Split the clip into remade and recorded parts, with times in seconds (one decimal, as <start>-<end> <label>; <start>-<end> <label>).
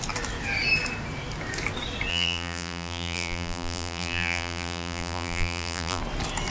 0.0-2.1 recorded; 2.1-6.0 remade; 6.0-6.5 recorded